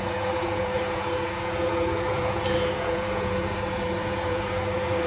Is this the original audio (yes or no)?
no